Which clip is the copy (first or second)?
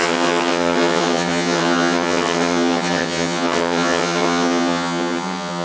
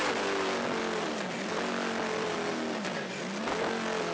first